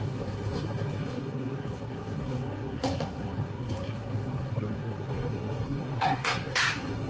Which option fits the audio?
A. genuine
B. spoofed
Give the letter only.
B